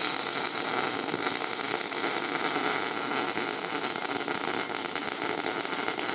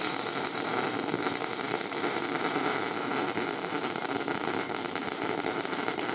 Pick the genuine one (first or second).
first